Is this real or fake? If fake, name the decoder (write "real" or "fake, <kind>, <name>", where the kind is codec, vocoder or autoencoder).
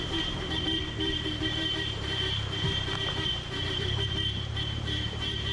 fake, vocoder, BigVGAN v2